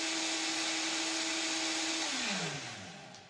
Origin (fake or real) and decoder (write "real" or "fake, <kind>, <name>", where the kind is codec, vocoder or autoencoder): real